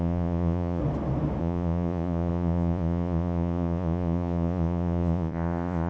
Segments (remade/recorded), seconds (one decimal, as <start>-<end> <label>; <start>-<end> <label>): 0.0-0.8 remade; 0.8-1.4 recorded; 1.4-5.9 remade